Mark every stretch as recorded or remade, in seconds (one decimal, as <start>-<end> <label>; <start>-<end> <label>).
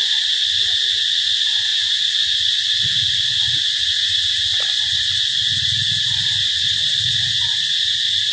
0.0-8.3 recorded